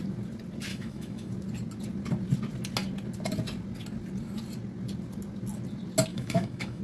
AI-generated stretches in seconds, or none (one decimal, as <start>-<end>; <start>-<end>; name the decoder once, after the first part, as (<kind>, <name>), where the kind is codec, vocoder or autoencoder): 0.7-1.3 (autoencoder, DAC-VAE); 6.1-6.8

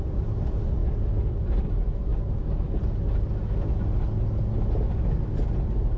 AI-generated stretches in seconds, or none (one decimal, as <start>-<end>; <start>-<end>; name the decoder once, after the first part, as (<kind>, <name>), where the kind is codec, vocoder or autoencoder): none

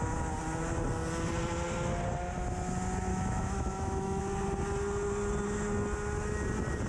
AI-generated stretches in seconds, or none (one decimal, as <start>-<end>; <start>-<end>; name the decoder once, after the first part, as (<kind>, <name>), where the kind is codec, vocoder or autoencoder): 3.1-4.2 (autoencoder, DAC-VAE)

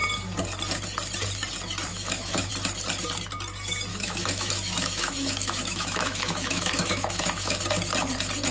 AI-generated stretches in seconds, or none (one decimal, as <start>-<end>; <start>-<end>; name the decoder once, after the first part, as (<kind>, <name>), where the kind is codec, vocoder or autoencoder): 1.9-2.5 (autoencoder, DAC-VAE); 3.9-7.6